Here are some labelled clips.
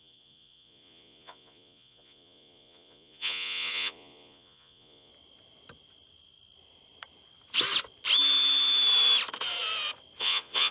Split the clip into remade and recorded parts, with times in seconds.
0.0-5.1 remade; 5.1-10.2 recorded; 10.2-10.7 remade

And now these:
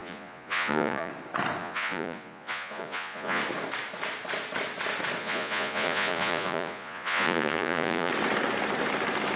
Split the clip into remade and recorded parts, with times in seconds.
0.0-1.1 remade; 1.1-1.6 recorded; 1.6-3.4 remade; 3.4-5.2 recorded; 5.2-8.1 remade; 8.1-9.4 recorded

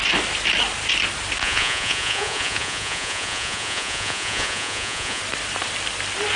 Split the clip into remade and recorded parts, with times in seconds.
0.0-1.4 recorded; 1.4-5.2 remade; 5.2-6.4 recorded